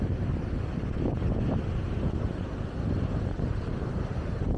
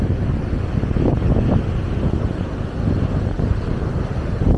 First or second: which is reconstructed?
first